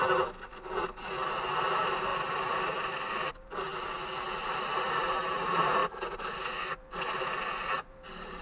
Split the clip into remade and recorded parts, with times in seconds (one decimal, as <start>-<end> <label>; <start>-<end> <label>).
0.0-8.4 recorded